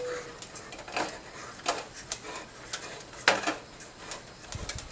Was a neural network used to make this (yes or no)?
no